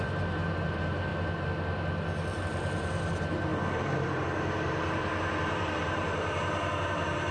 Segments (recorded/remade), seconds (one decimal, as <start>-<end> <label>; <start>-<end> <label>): 0.0-1.1 remade; 1.1-2.4 recorded; 2.4-7.3 remade